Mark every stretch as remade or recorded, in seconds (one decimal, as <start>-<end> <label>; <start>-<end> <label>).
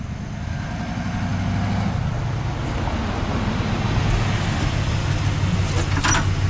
0.0-6.5 recorded